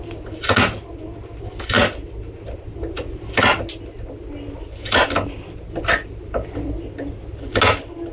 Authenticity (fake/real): real